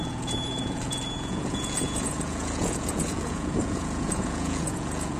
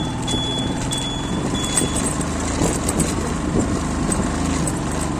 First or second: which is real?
second